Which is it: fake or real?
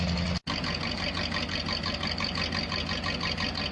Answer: real